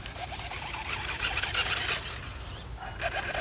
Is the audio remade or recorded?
recorded